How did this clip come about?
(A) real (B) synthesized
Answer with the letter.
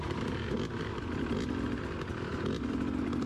A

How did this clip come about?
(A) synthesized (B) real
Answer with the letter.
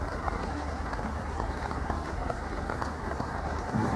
A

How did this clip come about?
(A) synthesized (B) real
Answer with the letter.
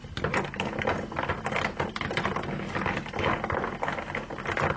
B